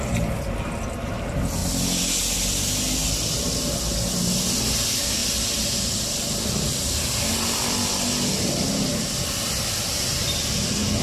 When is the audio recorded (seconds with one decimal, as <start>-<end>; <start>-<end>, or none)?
0.0-11.0